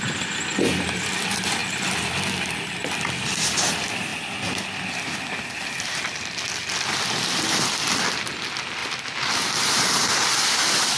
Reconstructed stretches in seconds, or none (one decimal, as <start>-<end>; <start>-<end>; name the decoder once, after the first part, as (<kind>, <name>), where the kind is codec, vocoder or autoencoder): none

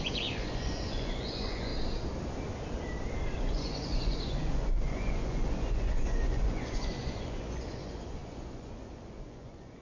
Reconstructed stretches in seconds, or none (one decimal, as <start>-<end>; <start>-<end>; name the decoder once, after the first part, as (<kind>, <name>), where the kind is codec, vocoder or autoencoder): 0.0-1.7 (vocoder, Vocos); 3.4-9.8

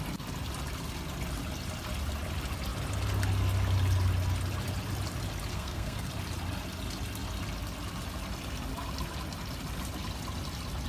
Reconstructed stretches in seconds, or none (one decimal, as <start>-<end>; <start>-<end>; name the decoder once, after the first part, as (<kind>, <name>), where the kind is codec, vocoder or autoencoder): 5.5-6.1 (codec, SNAC)

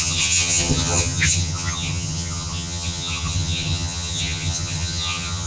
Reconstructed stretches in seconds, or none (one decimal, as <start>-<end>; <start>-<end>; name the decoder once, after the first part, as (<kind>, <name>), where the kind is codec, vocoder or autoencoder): 0.0-5.5 (vocoder, HiFi-GAN)

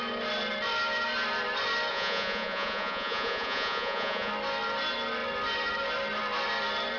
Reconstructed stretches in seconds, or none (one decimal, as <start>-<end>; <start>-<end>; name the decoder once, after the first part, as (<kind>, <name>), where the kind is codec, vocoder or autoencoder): 1.9-4.3 (vocoder, Vocos)

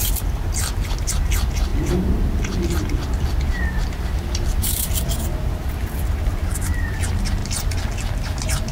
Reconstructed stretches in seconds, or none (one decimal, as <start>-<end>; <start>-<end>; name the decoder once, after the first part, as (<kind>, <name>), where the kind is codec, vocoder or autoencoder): none

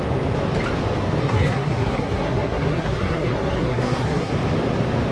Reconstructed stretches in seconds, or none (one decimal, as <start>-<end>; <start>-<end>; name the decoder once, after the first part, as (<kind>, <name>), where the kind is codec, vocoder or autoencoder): 1.2-4.3 (codec, SNAC)

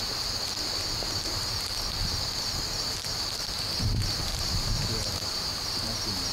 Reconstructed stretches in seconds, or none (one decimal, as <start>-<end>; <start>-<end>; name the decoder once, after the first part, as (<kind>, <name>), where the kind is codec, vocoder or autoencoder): 4.3-6.3 (vocoder, BigVGAN v2)